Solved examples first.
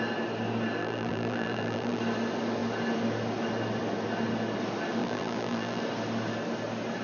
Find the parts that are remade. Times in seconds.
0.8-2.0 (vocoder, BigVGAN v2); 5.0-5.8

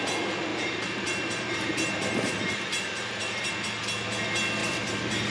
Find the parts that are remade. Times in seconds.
0.5-3.5 (vocoder, BigVGAN v2); 4.6-5.3

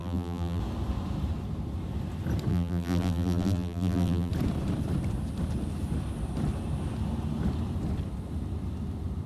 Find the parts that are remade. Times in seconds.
0.0-0.6 (vocoder, BigVGAN v2); 2.5-4.3

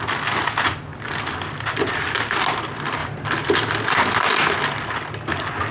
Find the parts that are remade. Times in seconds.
0.9-1.9 (vocoder, BigVGAN v2); 3.0-4.2